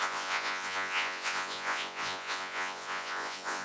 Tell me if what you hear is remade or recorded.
remade